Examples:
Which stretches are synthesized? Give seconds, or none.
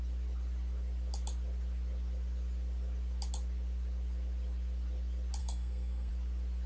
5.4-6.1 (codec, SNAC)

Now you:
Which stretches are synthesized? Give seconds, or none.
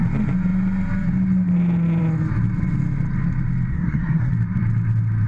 3.7-4.3 (codec, SNAC)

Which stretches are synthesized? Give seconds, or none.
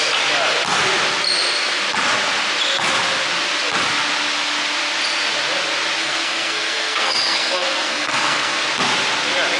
6.0-8.7 (codec, SNAC)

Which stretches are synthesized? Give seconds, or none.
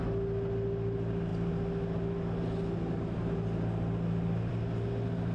none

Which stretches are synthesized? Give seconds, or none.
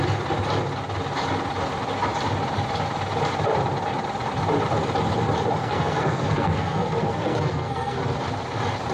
5.6-8.0 (codec, SNAC)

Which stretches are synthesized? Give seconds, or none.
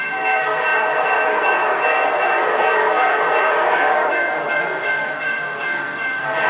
0.0-6.5 (codec, SNAC)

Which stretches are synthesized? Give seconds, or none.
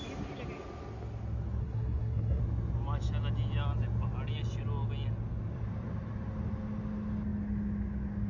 1.6-2.4 (codec, SNAC)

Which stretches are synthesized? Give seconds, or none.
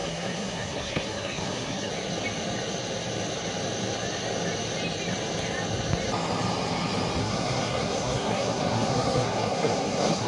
0.0-1.9 (codec, SNAC); 7.2-10.3